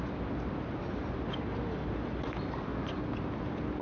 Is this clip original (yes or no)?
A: yes